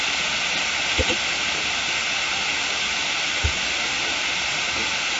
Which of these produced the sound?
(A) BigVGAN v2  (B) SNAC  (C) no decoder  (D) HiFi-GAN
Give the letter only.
C